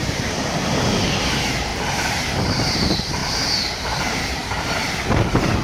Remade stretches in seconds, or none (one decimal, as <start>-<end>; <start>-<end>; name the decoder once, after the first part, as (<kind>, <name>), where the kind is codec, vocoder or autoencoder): 0.0-1.7 (vocoder, BigVGAN v2); 2.4-5.6